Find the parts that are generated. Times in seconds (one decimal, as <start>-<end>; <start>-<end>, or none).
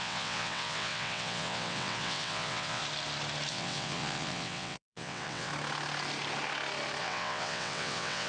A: 0.0-2.8; 3.5-5.5; 7.0-8.3